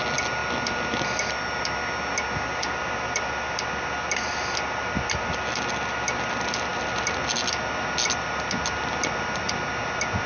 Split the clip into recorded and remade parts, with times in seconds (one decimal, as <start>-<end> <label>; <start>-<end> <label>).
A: 0.0-10.3 recorded